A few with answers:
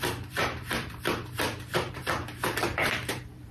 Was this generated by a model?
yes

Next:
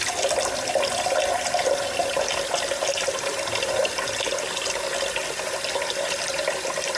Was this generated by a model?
no